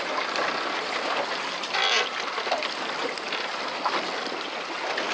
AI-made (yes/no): no